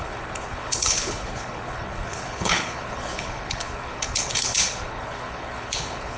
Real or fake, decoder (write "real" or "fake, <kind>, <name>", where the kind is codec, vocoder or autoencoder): fake, codec, HILCodec